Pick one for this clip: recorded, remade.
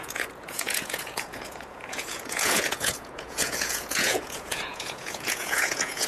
remade